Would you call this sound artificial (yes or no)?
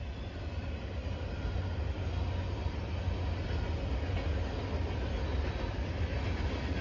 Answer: no